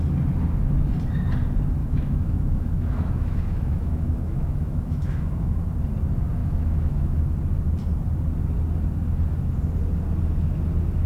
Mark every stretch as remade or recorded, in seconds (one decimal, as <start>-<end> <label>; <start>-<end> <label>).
0.0-1.8 recorded; 1.8-5.6 remade; 5.6-6.4 recorded; 6.4-7.3 remade; 7.3-11.1 recorded